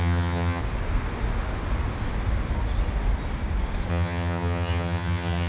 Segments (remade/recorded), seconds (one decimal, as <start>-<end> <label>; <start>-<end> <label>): 0.0-0.6 remade; 0.6-3.9 recorded; 3.9-5.5 remade